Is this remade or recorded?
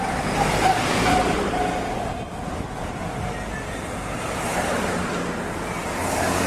recorded